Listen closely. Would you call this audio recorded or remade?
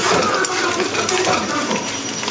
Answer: recorded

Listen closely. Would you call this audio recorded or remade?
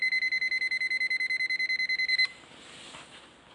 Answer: recorded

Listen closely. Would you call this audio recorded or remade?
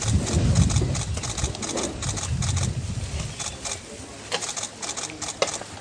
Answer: recorded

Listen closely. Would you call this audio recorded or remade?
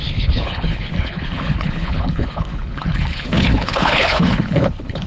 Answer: remade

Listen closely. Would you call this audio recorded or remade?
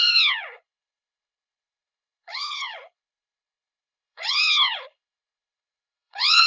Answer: remade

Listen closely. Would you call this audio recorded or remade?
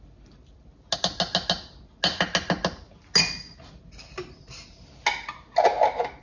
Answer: recorded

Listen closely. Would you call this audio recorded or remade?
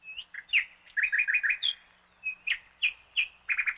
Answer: recorded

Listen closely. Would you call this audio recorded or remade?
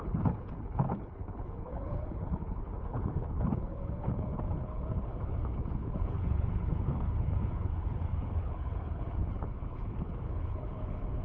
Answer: remade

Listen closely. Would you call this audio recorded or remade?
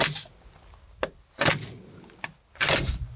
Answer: recorded